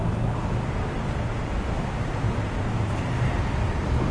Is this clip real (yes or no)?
yes